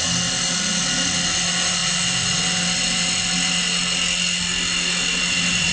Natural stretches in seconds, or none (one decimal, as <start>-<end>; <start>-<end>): 0.0-5.7